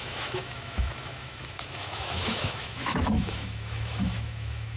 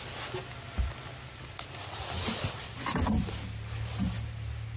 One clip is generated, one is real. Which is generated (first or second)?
first